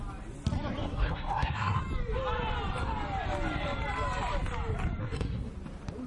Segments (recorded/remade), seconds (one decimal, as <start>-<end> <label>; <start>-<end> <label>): 0.0-0.8 recorded; 0.8-1.8 remade; 1.8-5.0 recorded; 5.0-5.5 remade; 5.5-6.1 recorded